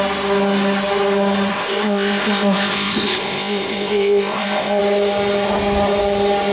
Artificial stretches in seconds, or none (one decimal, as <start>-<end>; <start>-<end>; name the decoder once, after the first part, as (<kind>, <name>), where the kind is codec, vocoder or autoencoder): 1.5-4.8 (codec, ZipCodec)